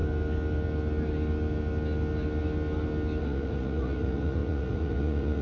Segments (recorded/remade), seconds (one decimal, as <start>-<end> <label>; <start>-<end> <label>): 0.0-3.2 recorded; 3.2-5.4 remade